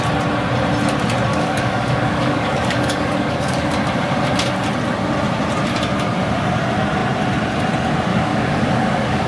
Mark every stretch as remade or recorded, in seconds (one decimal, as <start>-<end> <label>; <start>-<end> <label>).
0.0-1.3 recorded; 1.3-3.7 remade; 3.7-8.1 recorded; 8.1-9.3 remade